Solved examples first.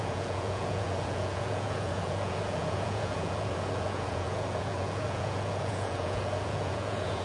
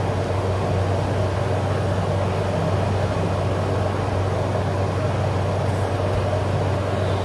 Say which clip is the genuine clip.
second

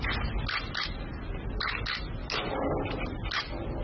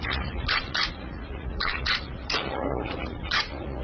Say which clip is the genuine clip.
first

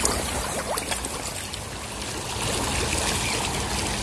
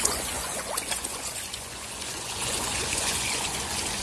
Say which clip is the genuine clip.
first